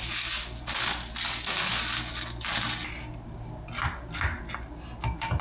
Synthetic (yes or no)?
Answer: no